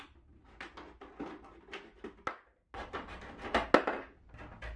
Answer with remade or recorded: recorded